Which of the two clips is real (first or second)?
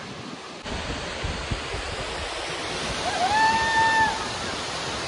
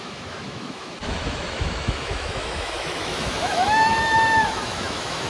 first